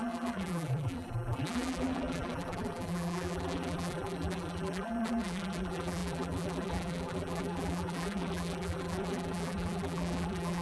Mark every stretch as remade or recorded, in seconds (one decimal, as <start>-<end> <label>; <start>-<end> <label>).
0.0-10.6 remade